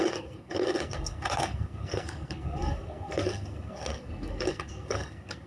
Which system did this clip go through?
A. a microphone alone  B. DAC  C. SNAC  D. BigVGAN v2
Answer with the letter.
C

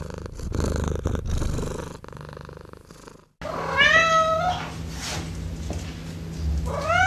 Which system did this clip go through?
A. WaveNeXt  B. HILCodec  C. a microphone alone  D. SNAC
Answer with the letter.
C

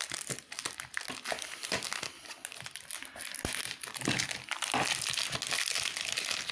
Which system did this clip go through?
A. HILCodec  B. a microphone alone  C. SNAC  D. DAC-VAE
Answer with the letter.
B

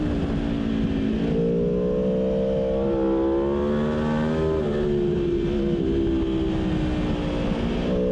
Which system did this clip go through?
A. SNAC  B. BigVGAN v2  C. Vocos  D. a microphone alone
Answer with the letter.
D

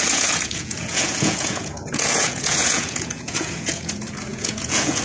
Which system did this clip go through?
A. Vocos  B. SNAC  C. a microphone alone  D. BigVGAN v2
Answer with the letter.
A